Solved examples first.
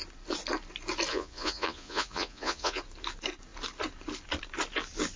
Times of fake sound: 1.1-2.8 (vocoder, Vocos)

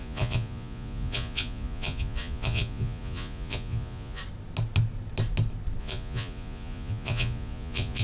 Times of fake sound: 0.0-4.2 (vocoder, Vocos); 5.8-8.0

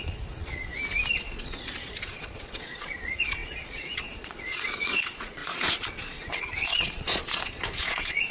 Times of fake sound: 0.0-0.7 (vocoder, Vocos); 1.2-8.3